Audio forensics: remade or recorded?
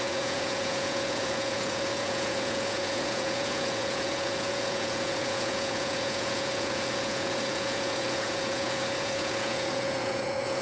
remade